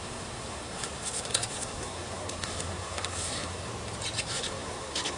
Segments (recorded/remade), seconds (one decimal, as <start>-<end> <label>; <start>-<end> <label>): 0.0-3.7 remade; 3.7-4.2 recorded; 4.2-5.2 remade